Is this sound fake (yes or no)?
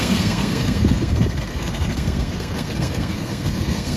yes